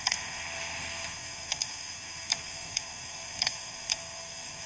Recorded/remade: remade